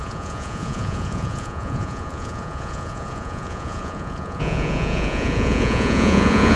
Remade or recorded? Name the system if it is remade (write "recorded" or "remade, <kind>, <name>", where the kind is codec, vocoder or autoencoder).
remade, vocoder, Vocos